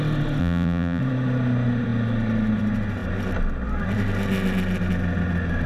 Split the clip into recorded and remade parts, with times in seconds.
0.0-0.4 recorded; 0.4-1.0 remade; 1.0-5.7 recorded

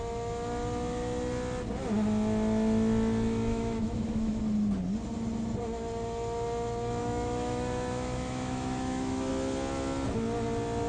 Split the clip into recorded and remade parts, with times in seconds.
0.0-3.5 recorded; 3.5-4.4 remade; 4.4-7.0 recorded; 7.0-9.3 remade; 9.3-10.9 recorded

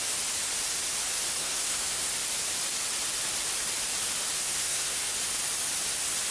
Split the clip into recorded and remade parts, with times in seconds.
0.0-1.4 recorded; 1.4-2.1 remade; 2.1-4.4 recorded; 4.4-5.1 remade; 5.1-6.3 recorded

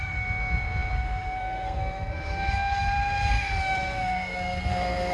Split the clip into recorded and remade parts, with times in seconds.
0.0-5.1 remade